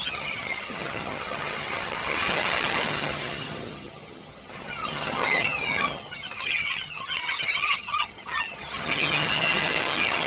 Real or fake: fake